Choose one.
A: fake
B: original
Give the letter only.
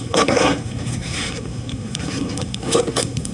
A